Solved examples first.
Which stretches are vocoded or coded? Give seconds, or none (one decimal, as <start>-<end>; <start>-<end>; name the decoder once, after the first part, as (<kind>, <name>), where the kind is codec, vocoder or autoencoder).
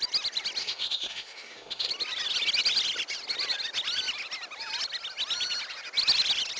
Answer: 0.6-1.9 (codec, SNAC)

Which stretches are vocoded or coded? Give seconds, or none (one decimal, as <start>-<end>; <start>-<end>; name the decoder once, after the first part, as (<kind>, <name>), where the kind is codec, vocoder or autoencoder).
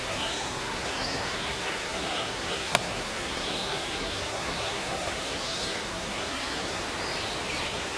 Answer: 0.0-6.8 (codec, SNAC); 7.6-8.0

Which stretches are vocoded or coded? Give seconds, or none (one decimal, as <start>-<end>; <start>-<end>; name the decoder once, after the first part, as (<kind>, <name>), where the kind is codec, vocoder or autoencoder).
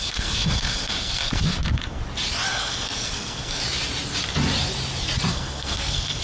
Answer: 0.0-2.0 (codec, SNAC); 2.5-3.6; 5.3-6.2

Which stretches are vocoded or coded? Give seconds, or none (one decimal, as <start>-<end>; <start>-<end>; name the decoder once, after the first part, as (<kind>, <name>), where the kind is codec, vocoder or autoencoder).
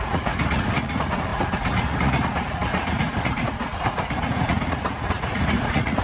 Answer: 0.0-6.0 (vocoder, Vocos)